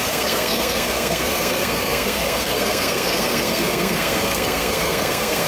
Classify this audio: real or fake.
fake